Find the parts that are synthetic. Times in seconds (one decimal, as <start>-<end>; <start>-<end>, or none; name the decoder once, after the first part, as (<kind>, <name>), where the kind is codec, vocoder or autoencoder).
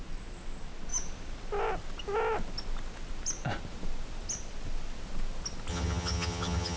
5.7-6.8 (vocoder, HiFi-GAN)